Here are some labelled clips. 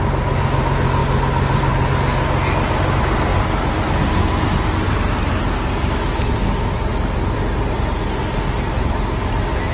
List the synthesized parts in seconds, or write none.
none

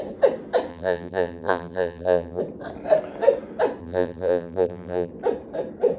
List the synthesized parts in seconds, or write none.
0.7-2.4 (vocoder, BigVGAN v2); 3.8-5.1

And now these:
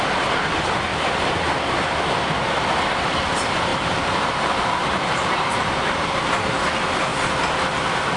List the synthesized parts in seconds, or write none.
0.9-1.7 (vocoder, BigVGAN v2); 3.7-6.6

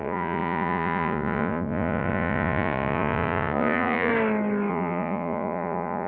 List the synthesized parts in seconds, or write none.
0.0-4.1 (vocoder, Vocos); 4.7-6.1